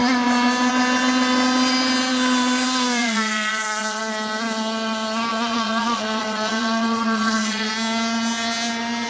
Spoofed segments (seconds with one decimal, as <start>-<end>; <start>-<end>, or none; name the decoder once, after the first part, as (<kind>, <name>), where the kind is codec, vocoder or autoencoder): 3.0-4.0 (vocoder, Vocos); 5.3-7.7